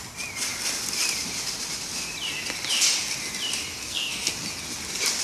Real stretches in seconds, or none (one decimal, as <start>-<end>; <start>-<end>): 0.0-3.8; 4.3-5.2